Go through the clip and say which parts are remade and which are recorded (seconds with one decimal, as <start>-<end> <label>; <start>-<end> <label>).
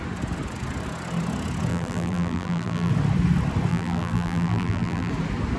0.0-1.7 recorded; 1.7-2.9 remade; 2.9-3.7 recorded; 3.7-5.1 remade; 5.1-5.6 recorded